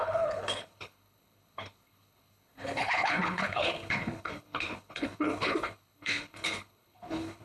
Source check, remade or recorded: remade